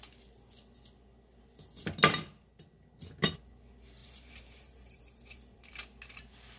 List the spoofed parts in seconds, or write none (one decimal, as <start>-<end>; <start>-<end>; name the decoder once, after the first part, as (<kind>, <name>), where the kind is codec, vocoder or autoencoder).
4.0-5.7 (vocoder, BigVGAN v2)